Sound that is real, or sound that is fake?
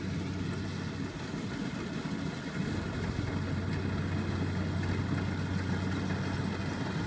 real